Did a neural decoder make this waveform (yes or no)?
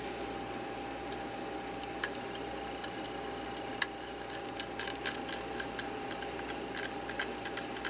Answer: no